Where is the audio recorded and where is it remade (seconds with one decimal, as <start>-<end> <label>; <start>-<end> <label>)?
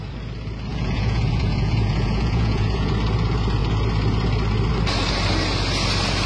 0.0-0.7 recorded; 0.7-2.9 remade; 2.9-6.3 recorded